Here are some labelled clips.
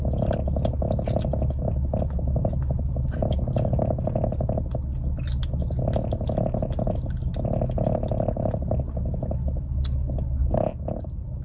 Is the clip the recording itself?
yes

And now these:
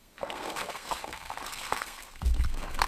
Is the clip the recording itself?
no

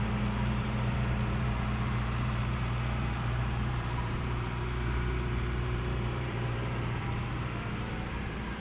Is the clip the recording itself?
no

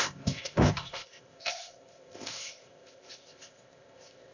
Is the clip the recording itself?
no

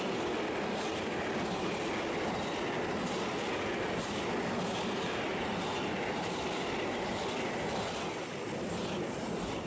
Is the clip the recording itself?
yes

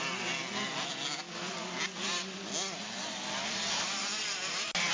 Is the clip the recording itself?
yes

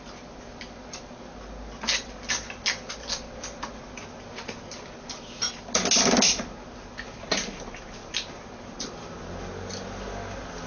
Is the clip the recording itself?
yes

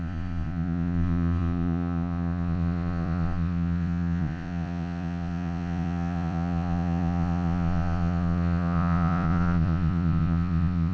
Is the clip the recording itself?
no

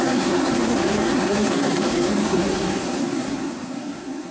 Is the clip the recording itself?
no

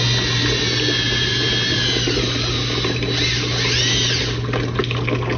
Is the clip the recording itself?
yes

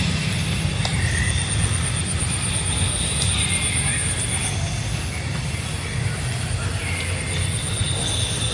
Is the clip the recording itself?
yes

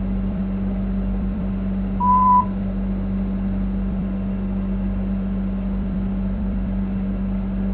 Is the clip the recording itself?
no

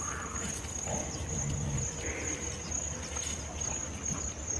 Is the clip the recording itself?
yes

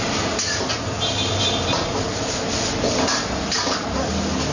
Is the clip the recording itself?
yes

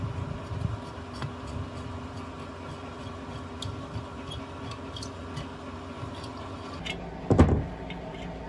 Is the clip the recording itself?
yes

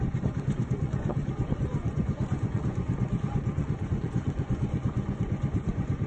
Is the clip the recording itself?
no